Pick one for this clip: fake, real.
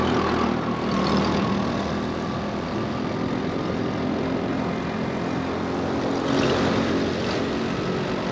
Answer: real